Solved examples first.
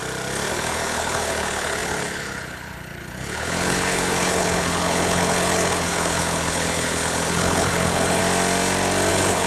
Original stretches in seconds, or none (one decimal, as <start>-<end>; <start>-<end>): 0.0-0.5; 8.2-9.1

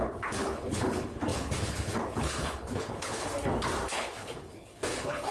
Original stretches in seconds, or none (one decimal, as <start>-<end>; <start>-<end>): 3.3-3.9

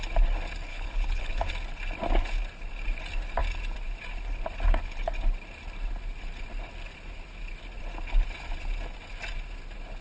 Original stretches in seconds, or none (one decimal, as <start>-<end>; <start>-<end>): 0.0-0.7; 1.4-10.0

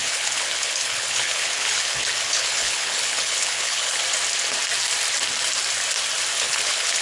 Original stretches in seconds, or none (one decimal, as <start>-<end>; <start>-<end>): 4.0-6.3

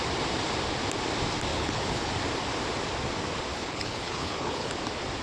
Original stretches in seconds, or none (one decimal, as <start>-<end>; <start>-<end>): 0.0-1.5; 2.1-3.5; 4.7-5.2

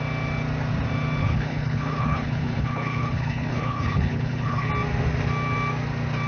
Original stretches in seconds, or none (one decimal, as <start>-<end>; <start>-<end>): 0.0-1.2; 4.7-6.3

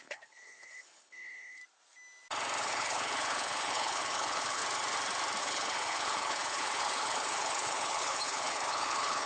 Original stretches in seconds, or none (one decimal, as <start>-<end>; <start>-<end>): 1.6-2.6; 4.6-5.4